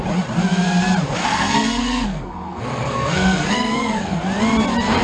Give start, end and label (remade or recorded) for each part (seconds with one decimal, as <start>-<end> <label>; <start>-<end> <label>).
0.0-1.2 recorded; 1.2-4.2 remade; 4.2-5.0 recorded